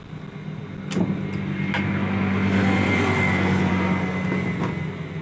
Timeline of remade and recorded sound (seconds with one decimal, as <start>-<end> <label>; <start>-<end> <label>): 0.0-5.2 recorded